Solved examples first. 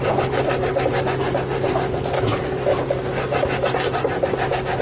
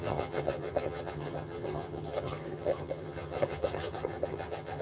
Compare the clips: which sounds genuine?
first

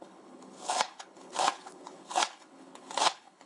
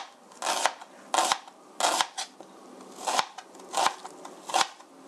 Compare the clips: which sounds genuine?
second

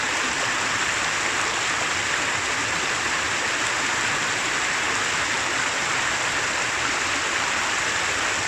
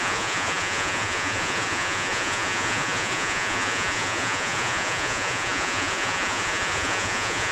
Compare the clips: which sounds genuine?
first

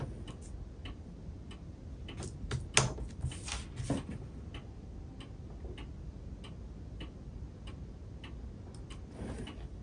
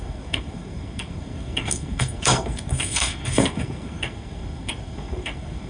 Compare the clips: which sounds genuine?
first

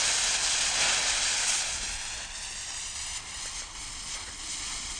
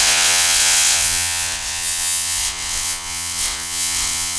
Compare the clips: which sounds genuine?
first